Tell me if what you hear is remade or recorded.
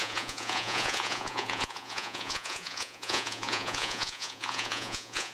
remade